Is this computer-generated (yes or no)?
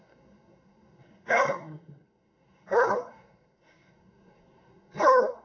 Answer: yes